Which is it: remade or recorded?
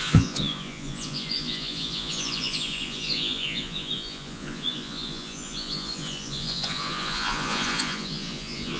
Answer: remade